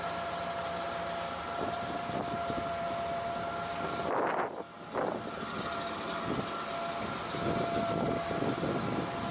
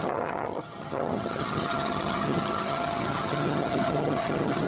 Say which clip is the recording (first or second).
first